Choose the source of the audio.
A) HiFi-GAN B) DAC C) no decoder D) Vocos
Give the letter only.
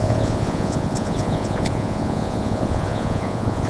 D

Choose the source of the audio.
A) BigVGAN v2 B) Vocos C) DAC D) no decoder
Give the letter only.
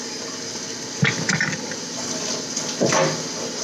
D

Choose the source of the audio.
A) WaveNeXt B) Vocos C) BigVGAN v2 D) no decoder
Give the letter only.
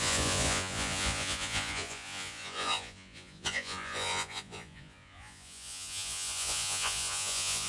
B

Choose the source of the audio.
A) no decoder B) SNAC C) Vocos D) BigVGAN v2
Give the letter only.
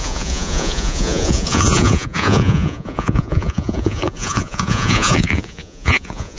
C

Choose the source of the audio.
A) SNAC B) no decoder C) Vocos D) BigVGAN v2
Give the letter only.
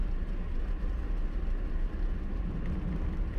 B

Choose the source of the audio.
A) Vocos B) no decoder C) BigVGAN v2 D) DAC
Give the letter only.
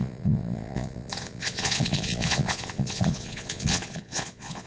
A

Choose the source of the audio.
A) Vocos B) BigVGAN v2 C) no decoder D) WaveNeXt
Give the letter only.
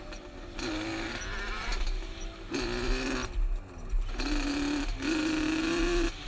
C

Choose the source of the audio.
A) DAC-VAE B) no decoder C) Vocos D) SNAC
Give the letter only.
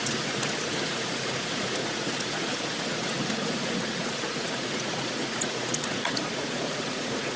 C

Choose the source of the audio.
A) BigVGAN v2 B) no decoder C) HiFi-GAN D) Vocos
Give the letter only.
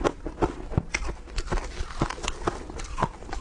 B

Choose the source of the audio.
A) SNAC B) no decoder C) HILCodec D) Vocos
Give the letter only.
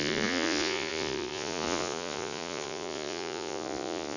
D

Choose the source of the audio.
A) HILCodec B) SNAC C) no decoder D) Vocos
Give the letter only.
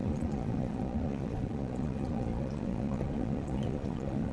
D